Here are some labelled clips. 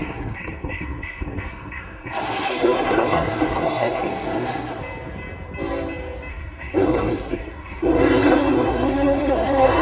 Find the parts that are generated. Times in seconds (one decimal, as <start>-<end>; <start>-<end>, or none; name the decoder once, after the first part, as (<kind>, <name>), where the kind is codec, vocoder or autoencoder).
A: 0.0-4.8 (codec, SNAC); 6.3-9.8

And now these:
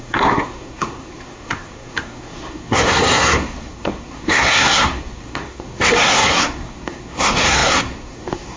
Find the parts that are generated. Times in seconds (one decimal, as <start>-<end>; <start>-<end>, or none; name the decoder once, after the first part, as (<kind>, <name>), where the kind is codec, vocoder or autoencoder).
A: 0.0-8.6 (codec, SNAC)

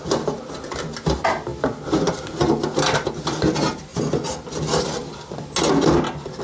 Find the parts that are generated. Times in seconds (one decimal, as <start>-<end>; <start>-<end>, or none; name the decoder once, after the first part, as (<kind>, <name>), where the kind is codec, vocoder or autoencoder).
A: none